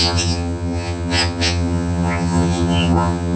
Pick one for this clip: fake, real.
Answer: fake